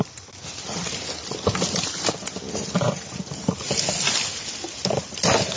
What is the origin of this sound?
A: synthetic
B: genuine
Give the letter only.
B